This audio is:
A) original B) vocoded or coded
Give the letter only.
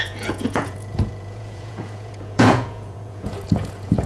B